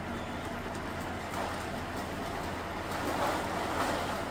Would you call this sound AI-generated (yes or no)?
no